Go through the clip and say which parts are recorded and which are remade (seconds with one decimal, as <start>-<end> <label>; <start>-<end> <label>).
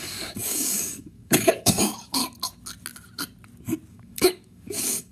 0.0-2.2 remade; 2.2-3.9 recorded; 3.9-5.1 remade